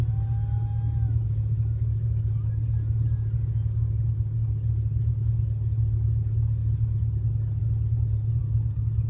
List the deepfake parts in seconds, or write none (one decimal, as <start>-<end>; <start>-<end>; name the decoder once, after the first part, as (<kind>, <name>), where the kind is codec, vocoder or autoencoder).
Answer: none